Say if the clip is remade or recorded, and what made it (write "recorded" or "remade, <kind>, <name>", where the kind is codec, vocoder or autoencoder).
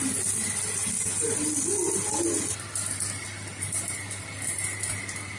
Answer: recorded